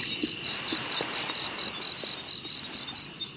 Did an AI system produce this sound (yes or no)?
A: yes